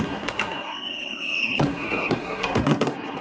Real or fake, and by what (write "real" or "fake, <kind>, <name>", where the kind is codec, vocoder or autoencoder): fake, codec, SNAC